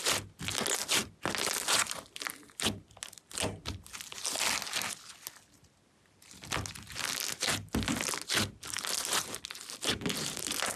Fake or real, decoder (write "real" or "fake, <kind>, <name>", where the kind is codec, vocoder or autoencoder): real